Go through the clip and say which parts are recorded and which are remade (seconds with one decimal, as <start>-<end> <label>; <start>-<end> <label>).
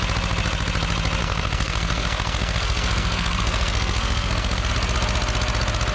0.0-1.2 recorded; 1.2-4.7 remade; 4.7-5.9 recorded